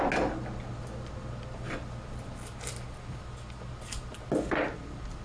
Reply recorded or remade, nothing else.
recorded